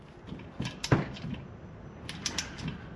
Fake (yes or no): no